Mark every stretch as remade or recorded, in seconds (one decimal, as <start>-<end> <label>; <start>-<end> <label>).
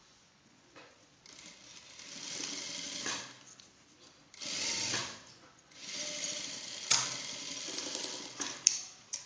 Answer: 0.0-1.1 remade; 1.1-5.0 recorded; 5.0-6.0 remade; 6.0-9.3 recorded